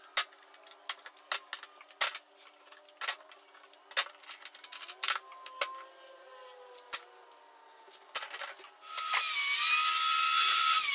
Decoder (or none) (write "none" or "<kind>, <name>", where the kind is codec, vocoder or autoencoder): none